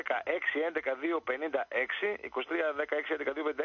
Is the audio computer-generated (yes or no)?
no